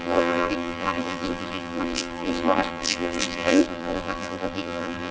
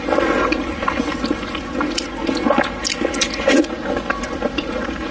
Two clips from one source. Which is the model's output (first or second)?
first